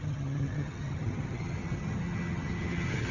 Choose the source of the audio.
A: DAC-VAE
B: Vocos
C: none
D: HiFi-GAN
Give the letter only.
D